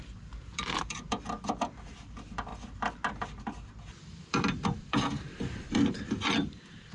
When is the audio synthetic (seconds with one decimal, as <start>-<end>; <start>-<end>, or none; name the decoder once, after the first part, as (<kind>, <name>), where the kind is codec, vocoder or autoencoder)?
0.0-2.5 (vocoder, BigVGAN v2); 4.0-6.9